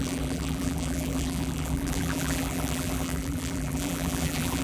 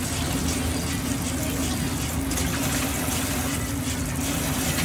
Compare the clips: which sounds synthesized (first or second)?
first